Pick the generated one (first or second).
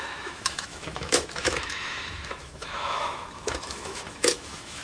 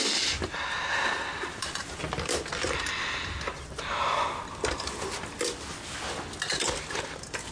first